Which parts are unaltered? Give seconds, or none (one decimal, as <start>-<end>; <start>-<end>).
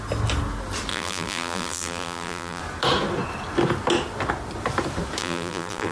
0.0-0.9; 2.6-5.2